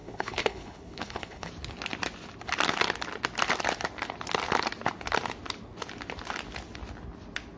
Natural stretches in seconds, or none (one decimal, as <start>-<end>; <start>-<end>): 1.5-7.6